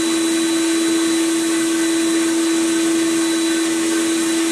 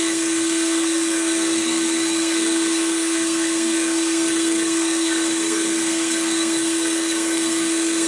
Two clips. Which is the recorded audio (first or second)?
first